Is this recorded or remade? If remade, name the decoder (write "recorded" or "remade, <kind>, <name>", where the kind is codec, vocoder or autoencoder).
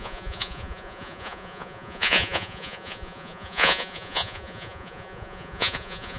remade, vocoder, Vocos